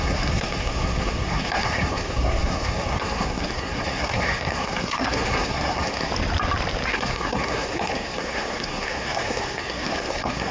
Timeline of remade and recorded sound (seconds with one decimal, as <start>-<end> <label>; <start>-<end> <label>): 0.0-6.1 remade; 6.1-6.9 recorded; 6.9-10.5 remade